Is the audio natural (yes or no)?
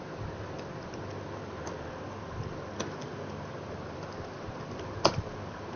yes